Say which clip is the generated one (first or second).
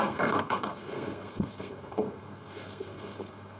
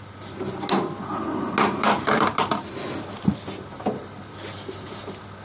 first